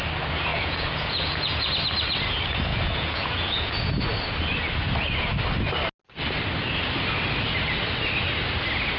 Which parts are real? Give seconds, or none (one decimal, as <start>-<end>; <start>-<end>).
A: 0.0-0.5; 1.7-2.7; 3.9-9.0